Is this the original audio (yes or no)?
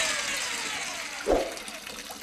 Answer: yes